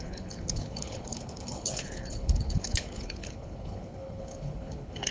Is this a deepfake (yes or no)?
yes